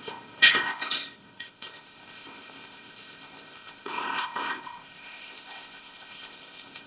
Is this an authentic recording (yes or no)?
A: no